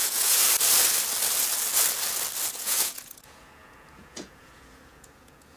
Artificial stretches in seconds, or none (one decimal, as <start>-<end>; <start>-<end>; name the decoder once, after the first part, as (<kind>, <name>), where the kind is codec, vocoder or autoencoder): 0.0-0.4 (vocoder, Vocos); 2.5-5.6